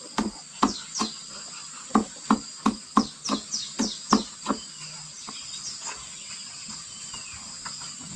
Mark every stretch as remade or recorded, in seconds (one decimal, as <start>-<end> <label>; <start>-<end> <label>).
0.0-8.2 recorded